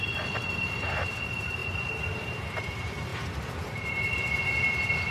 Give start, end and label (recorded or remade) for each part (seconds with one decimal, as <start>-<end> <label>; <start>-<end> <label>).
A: 0.0-5.1 recorded